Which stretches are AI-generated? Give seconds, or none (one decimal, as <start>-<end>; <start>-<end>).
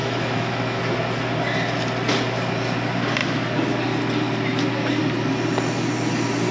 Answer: 0.0-0.8